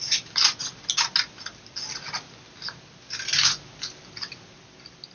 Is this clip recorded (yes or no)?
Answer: yes